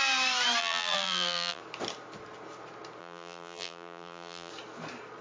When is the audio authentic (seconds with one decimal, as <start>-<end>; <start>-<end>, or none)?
0.0-0.6; 1.6-3.0; 4.5-5.2